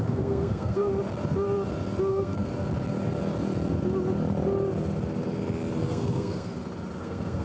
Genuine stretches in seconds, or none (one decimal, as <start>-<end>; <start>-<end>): 0.9-2.1; 2.5-5.9; 6.5-7.0